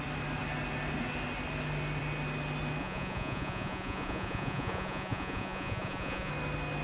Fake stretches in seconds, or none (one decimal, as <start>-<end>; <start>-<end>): 2.8-6.3